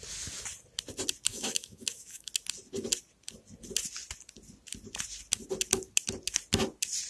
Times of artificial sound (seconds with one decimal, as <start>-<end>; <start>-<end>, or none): 1.3-2.3